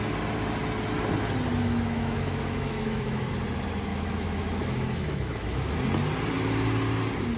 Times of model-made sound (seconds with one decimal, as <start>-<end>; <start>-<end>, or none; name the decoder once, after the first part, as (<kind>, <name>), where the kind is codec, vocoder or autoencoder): 1.5-3.3 (autoencoder, DAC-VAE); 3.9-5.7